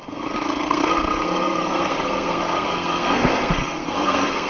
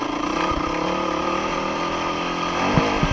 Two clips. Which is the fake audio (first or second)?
first